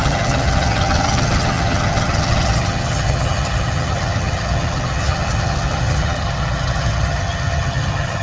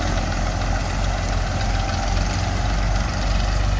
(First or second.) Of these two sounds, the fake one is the first